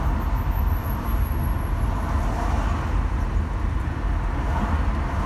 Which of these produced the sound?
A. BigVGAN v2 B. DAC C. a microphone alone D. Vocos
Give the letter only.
C